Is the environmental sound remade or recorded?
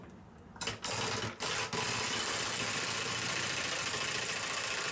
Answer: recorded